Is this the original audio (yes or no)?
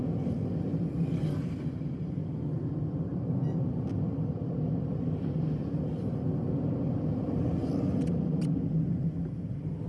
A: yes